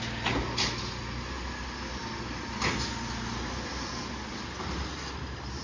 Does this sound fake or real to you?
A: real